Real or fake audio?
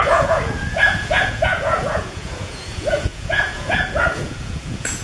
fake